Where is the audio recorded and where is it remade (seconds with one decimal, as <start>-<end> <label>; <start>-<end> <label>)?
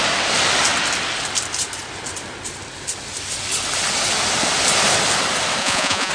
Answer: 0.0-5.6 recorded; 5.6-6.1 remade